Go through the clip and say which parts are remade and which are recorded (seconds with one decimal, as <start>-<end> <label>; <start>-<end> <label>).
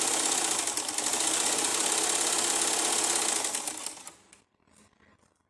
0.0-5.5 recorded